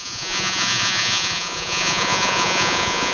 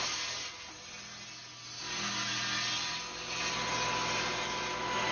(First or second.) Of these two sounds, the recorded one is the second